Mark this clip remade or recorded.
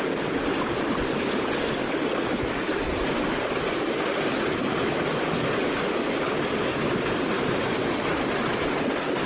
remade